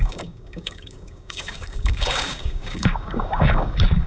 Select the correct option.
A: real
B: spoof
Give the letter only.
B